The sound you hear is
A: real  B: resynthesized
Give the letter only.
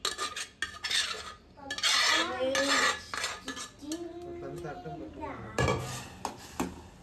A